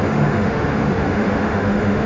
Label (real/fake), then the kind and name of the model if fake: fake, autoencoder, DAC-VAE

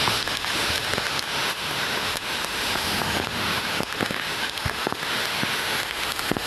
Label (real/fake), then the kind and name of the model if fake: fake, autoencoder, DAC-VAE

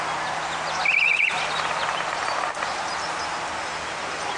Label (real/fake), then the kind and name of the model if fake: real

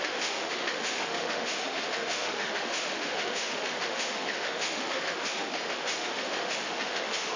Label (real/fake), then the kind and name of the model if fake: fake, autoencoder, DAC-VAE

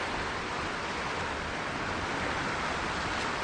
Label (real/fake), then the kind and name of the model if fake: real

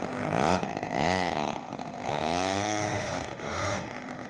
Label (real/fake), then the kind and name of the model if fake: fake, autoencoder, DAC-VAE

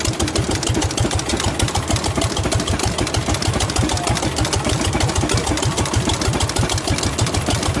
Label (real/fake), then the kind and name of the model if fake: real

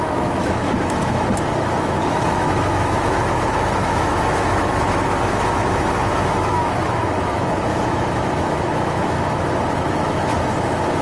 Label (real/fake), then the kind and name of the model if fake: fake, autoencoder, DAC-VAE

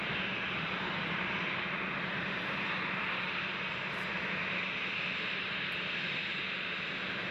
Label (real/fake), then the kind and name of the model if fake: real